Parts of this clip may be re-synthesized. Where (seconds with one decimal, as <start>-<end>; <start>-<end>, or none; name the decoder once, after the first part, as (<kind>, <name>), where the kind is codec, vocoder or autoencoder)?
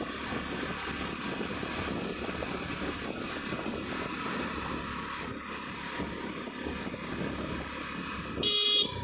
none